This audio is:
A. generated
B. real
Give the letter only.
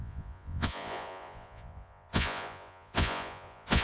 A